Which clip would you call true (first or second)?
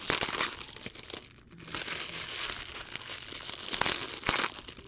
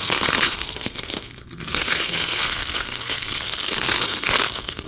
first